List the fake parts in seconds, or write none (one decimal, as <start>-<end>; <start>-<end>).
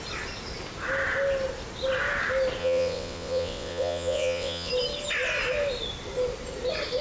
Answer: 2.6-4.7